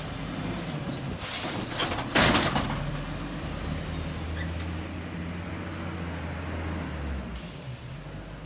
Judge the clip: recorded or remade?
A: recorded